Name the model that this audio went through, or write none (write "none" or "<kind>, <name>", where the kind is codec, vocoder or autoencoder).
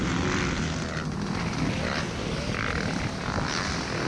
none